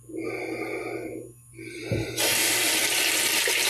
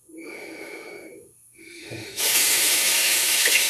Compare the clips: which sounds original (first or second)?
first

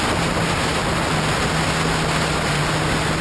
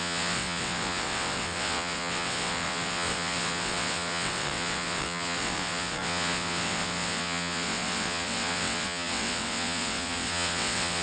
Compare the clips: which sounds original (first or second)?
first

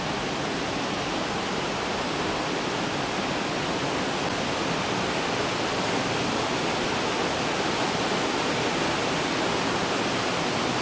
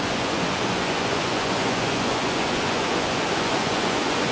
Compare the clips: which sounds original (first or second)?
first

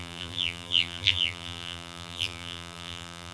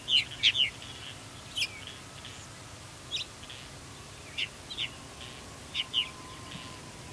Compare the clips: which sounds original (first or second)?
second